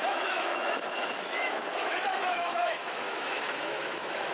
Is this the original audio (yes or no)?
no